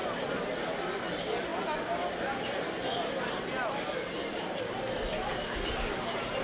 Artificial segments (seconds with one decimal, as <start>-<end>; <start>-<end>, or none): none